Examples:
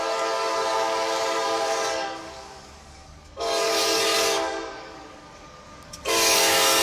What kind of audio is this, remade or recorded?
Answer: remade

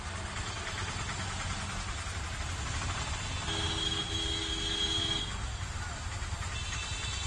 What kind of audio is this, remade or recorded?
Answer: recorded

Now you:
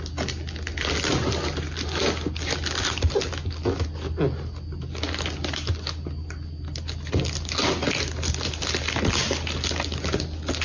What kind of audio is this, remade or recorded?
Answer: recorded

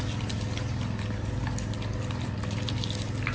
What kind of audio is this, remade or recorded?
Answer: recorded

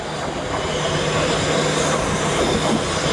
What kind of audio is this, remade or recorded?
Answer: recorded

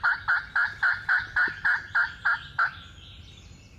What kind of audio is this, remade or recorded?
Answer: recorded